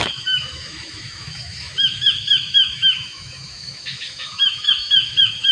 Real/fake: fake